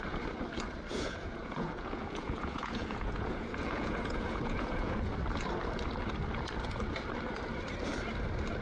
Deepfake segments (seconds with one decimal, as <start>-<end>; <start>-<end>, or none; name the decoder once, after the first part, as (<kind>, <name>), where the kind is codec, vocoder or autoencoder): 0.9-5.1 (vocoder, Vocos)